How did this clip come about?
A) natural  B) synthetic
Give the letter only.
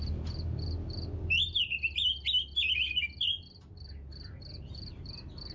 A